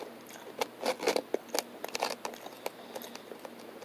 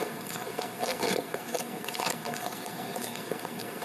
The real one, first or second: first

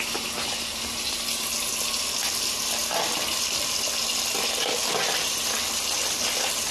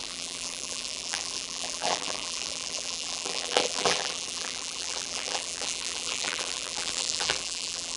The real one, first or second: first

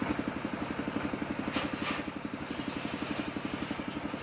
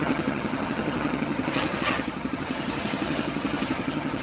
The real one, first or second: first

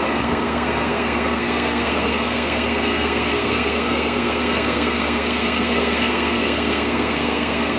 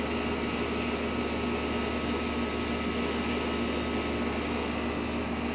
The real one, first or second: second